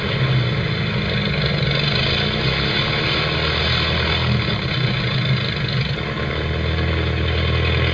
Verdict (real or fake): real